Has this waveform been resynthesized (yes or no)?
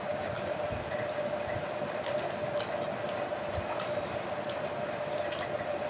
no